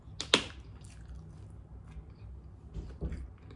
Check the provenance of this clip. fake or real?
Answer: real